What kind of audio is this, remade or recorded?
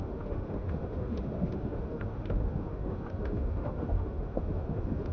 remade